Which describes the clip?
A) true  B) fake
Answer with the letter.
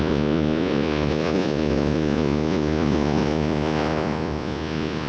B